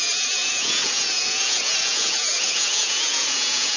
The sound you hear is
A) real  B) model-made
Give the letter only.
B